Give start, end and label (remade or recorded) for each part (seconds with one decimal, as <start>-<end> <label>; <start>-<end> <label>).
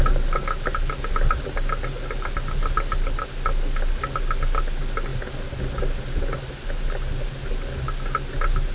0.0-8.7 recorded